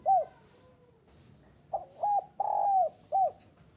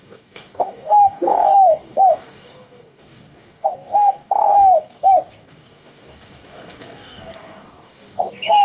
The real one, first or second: first